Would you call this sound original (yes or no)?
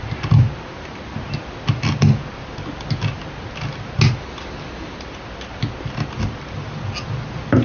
yes